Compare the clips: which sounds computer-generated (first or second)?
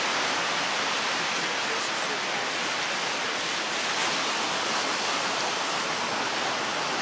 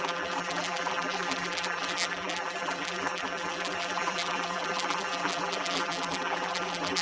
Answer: second